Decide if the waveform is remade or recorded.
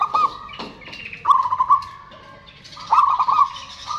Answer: recorded